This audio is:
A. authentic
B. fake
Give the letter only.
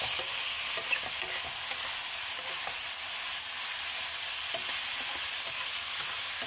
A